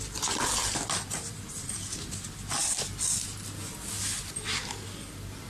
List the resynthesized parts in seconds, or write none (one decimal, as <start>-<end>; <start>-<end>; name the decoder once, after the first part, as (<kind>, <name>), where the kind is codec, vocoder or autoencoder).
0.6-1.4 (vocoder, BigVGAN v2); 2.6-4.6